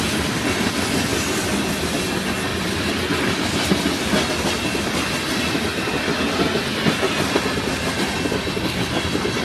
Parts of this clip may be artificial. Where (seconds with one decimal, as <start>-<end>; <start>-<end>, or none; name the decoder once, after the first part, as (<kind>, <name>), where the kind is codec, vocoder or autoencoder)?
1.1-1.9 (vocoder, BigVGAN v2); 2.5-4.0